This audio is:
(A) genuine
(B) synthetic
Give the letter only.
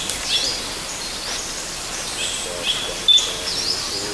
B